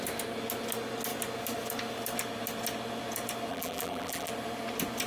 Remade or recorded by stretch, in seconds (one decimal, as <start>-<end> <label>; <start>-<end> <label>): 0.0-3.5 recorded; 3.5-4.3 remade; 4.3-5.1 recorded